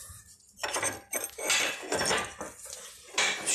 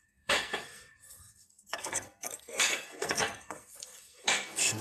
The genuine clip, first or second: first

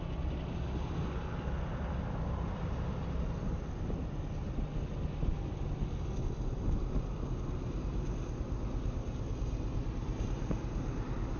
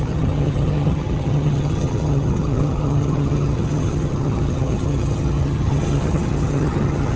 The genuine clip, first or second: first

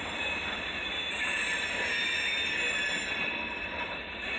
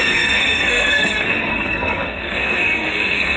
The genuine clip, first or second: first